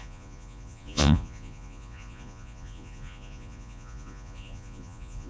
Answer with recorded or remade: remade